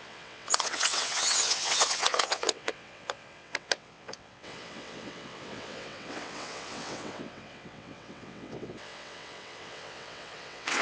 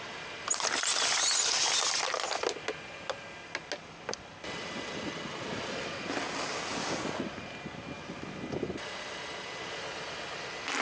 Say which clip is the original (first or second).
second